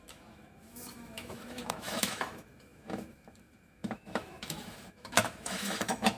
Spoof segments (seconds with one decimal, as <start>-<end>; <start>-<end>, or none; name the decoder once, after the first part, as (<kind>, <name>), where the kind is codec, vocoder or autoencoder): 0.0-6.2 (autoencoder, DAC-VAE)